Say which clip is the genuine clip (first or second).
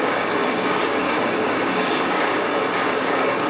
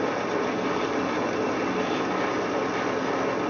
second